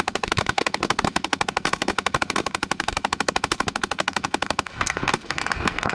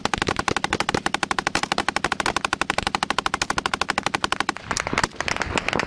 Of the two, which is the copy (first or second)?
first